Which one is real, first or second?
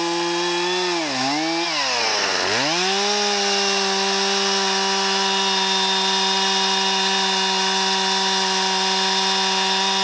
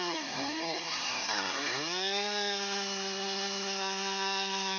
first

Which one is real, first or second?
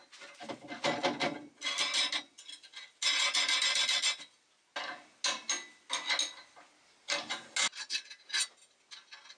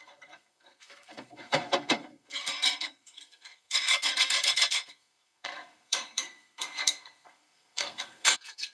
first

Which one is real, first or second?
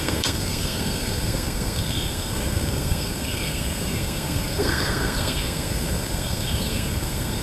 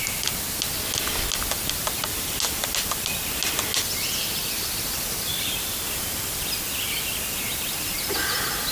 second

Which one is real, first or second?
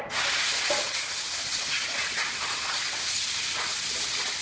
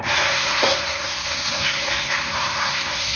first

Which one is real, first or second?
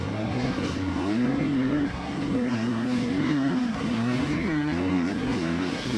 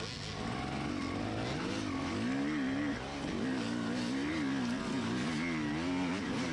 second